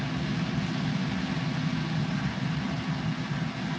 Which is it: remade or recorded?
recorded